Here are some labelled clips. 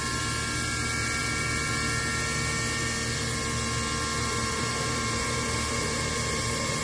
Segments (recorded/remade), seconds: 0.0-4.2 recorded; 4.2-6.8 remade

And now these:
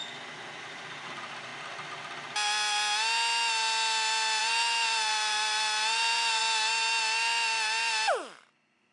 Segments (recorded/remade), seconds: 0.0-0.6 recorded; 0.6-1.5 remade; 1.5-4.4 recorded; 4.4-6.4 remade; 6.4-8.9 recorded

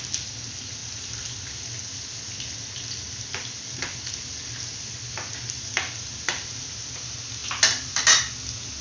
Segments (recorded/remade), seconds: 0.0-8.8 recorded

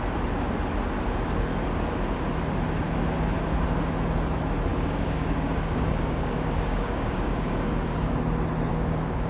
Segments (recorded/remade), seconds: 0.0-4.7 recorded; 4.7-8.2 remade; 8.2-8.7 recorded; 8.7-9.3 remade

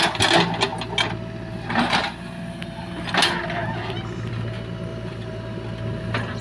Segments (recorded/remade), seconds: 0.0-4.9 recorded; 4.9-5.4 remade; 5.4-6.4 recorded

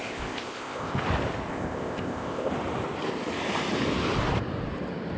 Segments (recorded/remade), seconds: 0.0-1.0 remade; 1.0-1.5 recorded; 1.5-2.5 remade; 2.5-5.2 recorded

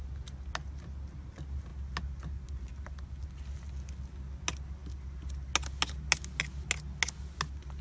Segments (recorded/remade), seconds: 0.0-7.8 recorded